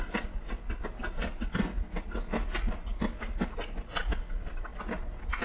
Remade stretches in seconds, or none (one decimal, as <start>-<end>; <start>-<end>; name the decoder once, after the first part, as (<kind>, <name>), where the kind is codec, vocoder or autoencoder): none